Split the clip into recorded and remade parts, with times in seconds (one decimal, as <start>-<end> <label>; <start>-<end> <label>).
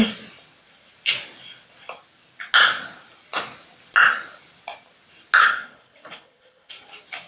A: 0.0-5.4 recorded; 5.4-6.7 remade; 6.7-7.3 recorded